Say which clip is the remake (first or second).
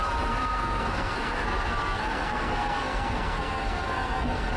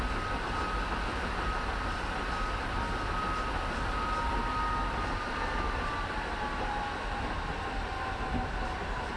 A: first